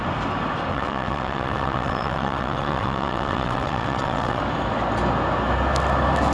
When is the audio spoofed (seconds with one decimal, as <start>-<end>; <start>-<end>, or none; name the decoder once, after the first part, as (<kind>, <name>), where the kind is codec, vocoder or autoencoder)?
0.7-4.4 (vocoder, WaveNeXt)